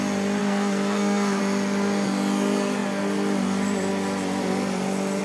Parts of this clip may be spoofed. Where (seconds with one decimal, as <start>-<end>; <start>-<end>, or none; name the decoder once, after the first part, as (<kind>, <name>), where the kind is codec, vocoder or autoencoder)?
0.4-1.4 (codec, SNAC)